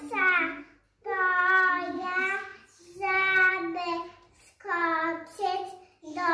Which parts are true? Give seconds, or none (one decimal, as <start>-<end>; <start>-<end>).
0.0-6.3